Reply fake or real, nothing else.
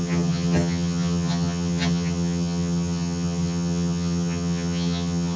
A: fake